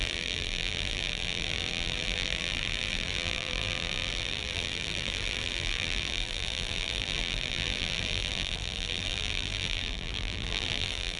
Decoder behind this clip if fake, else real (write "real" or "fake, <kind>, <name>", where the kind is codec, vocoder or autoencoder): fake, vocoder, BigVGAN v2